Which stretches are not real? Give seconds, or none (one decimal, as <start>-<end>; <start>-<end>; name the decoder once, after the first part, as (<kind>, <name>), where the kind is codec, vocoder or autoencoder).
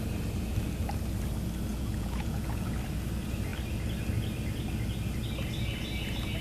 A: 1.7-2.7 (vocoder, Vocos)